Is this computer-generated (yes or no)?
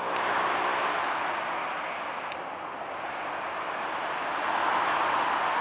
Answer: no